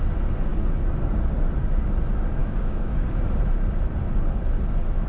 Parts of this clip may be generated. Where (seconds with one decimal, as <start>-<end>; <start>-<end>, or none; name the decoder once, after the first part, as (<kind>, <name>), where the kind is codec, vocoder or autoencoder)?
2.4-3.2 (codec, DAC)